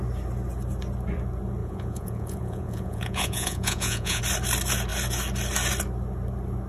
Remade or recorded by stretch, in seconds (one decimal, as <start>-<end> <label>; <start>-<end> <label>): 0.0-1.6 recorded; 1.6-4.2 remade; 4.2-6.7 recorded